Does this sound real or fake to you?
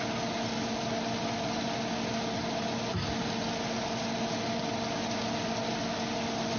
real